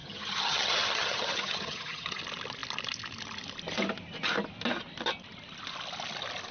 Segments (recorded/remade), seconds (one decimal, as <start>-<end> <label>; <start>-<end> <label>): 0.0-2.2 remade; 2.2-6.5 recorded